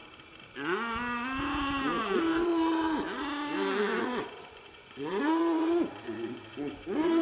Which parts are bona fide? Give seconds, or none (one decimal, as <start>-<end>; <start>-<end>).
0.0-2.0; 2.5-4.0